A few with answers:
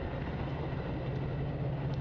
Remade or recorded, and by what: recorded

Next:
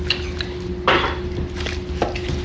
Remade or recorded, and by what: recorded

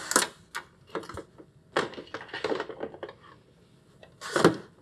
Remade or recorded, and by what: recorded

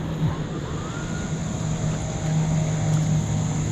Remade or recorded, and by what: recorded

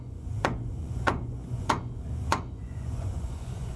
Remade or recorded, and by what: remade, vocoder, Vocos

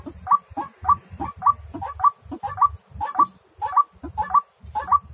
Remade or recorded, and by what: recorded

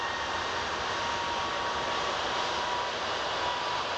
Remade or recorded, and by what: recorded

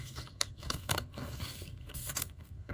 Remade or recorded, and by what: remade, codec, SNAC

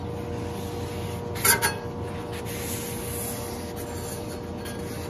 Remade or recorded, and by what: recorded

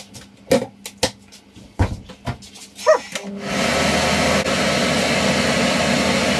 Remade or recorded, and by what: recorded